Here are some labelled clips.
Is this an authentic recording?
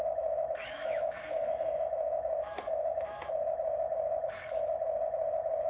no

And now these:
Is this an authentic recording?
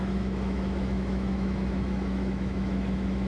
no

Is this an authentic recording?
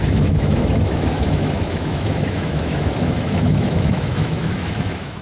no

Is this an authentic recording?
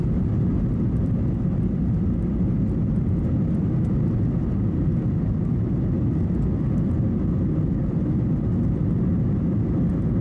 yes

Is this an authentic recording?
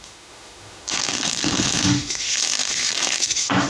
no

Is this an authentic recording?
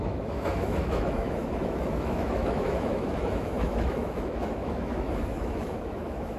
no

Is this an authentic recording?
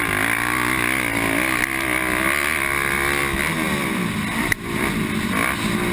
yes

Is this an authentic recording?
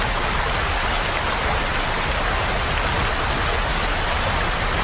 yes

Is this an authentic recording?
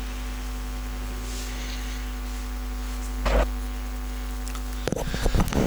yes